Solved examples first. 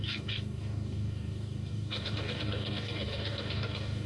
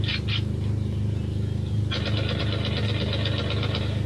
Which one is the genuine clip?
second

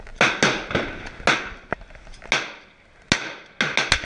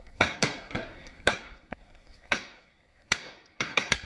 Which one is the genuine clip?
first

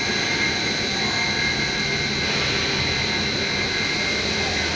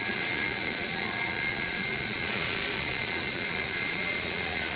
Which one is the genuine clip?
first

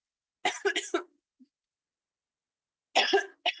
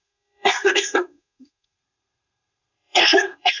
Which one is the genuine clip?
first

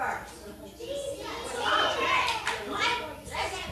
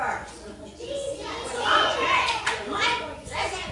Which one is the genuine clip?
first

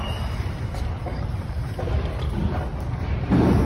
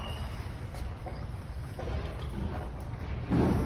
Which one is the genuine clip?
second